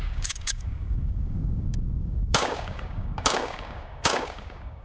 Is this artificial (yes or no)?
yes